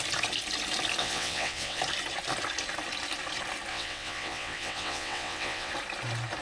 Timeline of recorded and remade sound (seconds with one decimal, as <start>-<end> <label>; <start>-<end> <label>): 0.0-1.0 recorded; 1.0-1.8 remade; 1.8-3.7 recorded; 3.7-5.7 remade; 5.7-6.4 recorded